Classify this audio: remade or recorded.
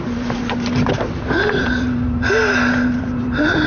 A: remade